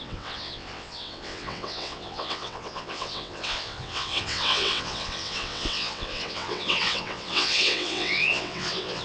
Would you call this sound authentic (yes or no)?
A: no